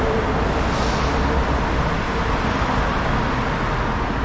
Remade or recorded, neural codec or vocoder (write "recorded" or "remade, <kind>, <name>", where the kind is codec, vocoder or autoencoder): recorded